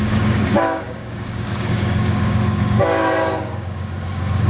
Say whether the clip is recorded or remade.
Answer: remade